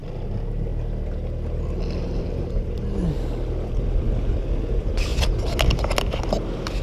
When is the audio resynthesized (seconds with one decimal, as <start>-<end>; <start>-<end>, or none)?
none